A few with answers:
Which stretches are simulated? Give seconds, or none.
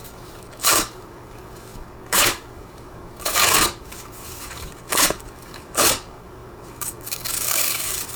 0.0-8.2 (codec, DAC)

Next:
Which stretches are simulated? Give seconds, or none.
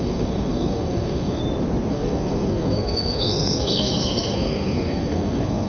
0.0-1.4 (codec, SNAC); 1.9-5.7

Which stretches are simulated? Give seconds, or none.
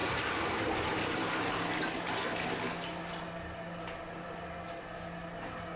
none